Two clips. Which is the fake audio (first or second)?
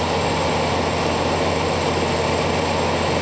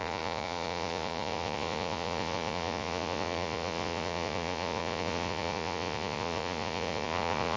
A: second